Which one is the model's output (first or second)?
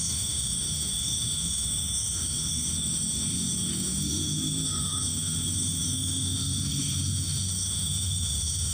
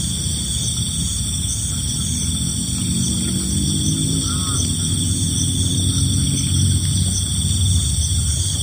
first